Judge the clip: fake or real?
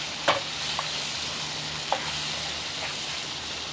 real